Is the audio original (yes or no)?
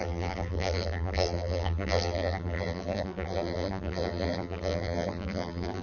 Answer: no